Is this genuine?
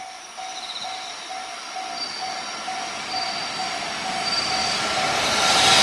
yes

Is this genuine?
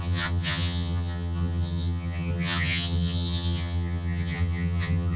no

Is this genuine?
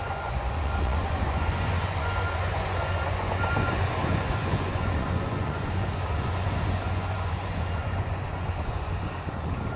no